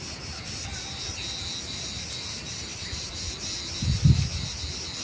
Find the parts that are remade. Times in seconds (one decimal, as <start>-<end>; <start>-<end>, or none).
none